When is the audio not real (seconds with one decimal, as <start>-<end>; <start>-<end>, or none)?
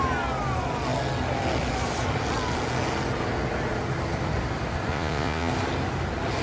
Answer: 4.9-5.5